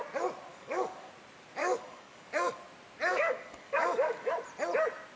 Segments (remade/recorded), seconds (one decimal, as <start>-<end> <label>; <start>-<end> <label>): 0.0-0.5 recorded; 0.5-1.1 remade; 1.1-1.6 recorded; 1.6-2.6 remade; 2.6-3.1 recorded; 3.1-4.3 remade; 4.3-5.2 recorded